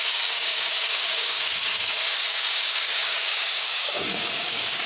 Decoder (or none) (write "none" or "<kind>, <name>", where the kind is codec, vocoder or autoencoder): codec, DAC